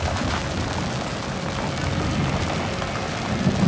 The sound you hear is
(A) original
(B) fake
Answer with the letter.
A